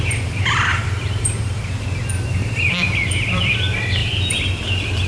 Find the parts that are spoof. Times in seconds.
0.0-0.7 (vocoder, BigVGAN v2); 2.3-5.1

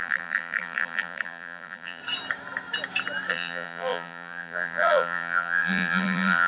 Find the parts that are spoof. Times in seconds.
0.0-2.0 (vocoder, BigVGAN v2); 3.3-6.5

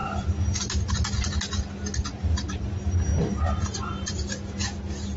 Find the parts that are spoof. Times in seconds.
2.1-2.6 (vocoder, BigVGAN v2); 3.1-4.1

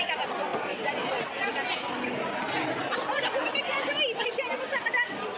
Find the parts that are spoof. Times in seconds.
none

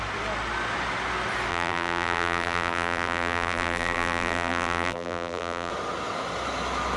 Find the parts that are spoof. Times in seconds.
1.5-5.7 (vocoder, BigVGAN v2)

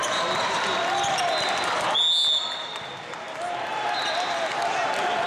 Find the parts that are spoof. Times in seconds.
none